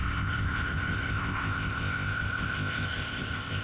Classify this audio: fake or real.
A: fake